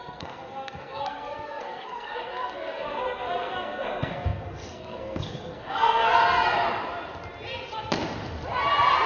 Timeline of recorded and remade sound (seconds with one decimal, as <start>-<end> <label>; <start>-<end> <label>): 0.0-6.2 remade; 6.2-9.1 recorded